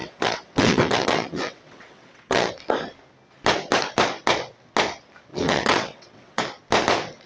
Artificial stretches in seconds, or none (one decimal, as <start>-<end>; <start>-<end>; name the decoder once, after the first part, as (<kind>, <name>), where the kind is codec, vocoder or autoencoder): 0.0-2.5 (vocoder, WaveNeXt); 5.3-6.4